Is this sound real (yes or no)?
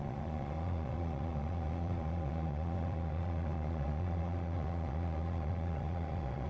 no